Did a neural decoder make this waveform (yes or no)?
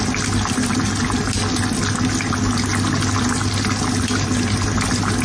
no